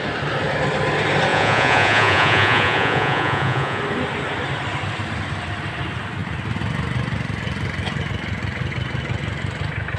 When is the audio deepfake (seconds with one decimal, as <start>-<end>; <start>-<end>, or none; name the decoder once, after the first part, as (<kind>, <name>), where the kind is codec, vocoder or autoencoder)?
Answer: 1.3-3.8 (vocoder, Vocos)